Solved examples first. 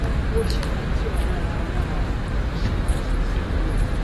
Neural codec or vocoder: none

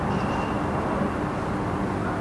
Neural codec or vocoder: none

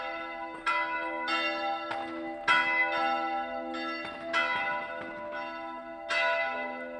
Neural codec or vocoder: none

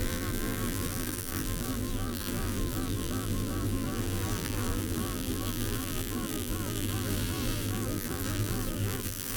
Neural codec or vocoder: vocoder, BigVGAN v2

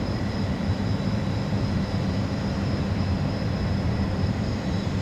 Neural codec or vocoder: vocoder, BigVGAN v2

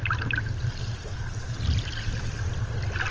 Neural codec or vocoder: none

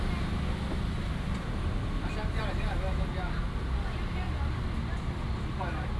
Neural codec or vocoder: none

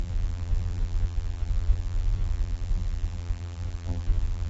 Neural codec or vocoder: vocoder, BigVGAN v2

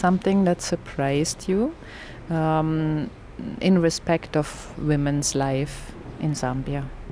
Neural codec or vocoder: none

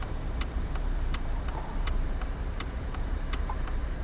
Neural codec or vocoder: vocoder, BigVGAN v2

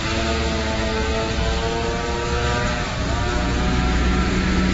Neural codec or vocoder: none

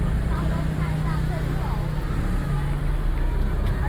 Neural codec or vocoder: none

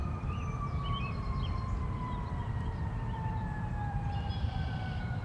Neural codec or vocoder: vocoder, BigVGAN v2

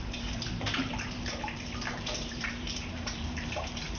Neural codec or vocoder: vocoder, BigVGAN v2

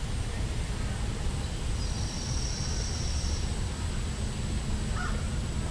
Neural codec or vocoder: none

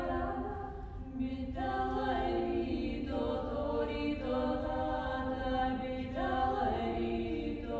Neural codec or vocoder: none